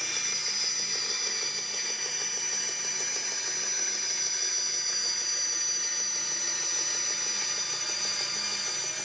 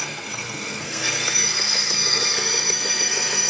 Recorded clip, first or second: first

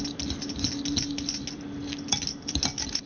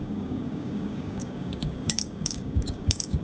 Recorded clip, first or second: first